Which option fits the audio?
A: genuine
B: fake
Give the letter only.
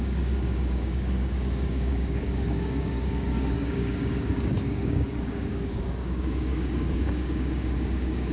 B